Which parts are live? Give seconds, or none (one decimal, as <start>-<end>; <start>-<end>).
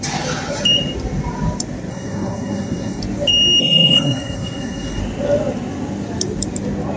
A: 0.0-1.9; 3.0-3.6; 5.0-7.0